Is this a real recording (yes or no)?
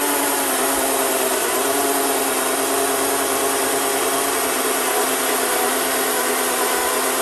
yes